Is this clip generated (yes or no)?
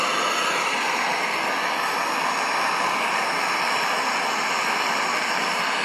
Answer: no